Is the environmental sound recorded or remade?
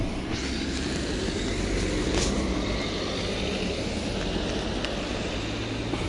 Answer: recorded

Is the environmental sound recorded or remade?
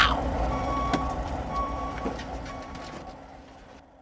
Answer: remade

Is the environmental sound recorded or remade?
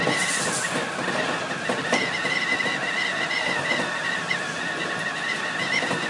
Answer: recorded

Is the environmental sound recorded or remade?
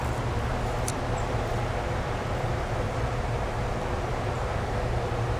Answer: recorded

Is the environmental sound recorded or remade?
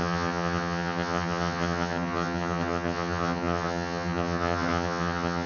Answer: remade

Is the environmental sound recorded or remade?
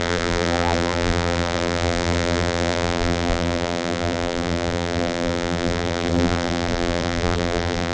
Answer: remade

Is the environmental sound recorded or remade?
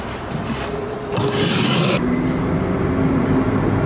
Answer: recorded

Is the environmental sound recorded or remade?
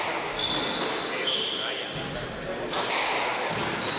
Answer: recorded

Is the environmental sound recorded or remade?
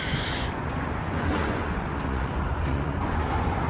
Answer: remade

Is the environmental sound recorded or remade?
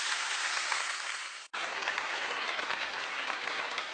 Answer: remade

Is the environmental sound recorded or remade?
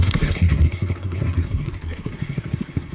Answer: remade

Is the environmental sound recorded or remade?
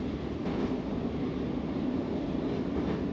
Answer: recorded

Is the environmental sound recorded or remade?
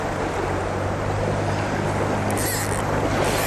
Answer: recorded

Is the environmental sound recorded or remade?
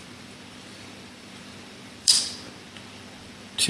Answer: remade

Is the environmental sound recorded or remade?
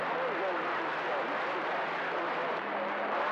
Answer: recorded